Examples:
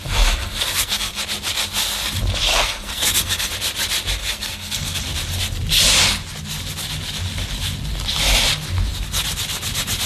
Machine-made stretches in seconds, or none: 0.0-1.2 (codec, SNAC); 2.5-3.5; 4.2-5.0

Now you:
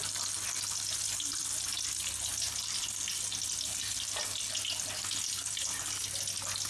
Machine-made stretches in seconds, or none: 2.3-2.8 (vocoder, BigVGAN v2)